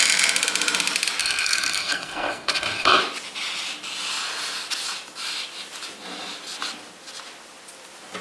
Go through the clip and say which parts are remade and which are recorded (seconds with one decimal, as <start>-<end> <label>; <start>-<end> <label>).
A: 0.0-1.2 recorded; 1.2-3.0 remade; 3.0-8.2 recorded

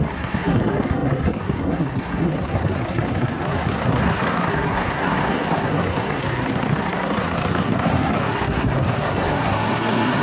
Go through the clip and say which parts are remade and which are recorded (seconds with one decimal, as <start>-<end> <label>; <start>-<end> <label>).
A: 0.0-10.2 remade

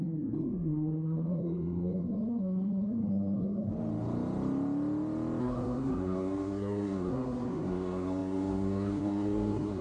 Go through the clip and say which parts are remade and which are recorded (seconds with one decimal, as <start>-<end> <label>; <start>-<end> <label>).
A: 0.0-3.7 remade; 3.7-5.4 recorded; 5.4-9.8 remade

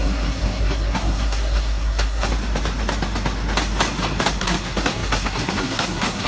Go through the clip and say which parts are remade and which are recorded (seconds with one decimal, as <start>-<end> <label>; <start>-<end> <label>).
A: 0.0-2.3 remade; 2.3-4.4 recorded; 4.4-6.3 remade

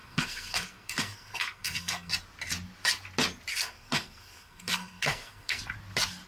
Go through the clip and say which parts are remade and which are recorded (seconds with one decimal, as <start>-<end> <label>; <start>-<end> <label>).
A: 0.0-2.1 remade; 2.1-3.5 recorded; 3.5-5.6 remade; 5.6-6.3 recorded

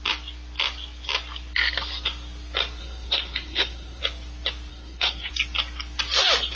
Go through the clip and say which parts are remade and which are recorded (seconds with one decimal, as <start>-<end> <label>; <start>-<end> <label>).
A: 0.0-2.8 recorded; 2.8-4.0 remade; 4.0-4.7 recorded; 4.7-5.3 remade; 5.3-6.6 recorded